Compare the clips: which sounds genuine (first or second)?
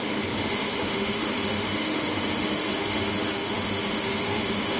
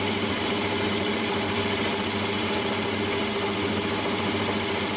second